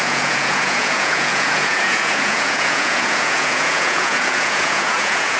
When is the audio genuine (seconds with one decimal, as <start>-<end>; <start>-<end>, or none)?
none